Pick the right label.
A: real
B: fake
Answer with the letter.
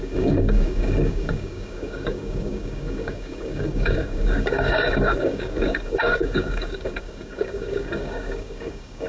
B